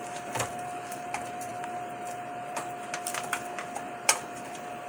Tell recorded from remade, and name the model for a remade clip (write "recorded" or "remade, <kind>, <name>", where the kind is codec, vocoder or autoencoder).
remade, vocoder, BigVGAN v2